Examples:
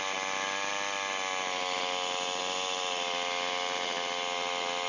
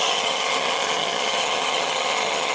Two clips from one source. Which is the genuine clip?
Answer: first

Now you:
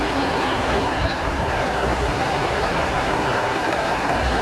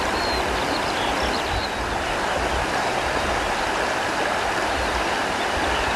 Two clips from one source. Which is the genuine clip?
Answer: second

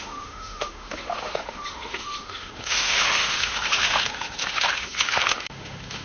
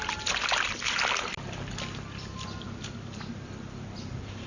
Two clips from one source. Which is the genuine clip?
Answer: second